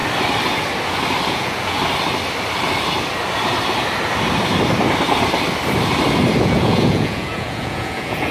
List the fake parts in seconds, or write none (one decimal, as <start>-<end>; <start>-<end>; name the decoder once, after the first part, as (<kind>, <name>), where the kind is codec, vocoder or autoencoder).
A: 1.3-1.8 (vocoder, Vocos); 6.4-8.3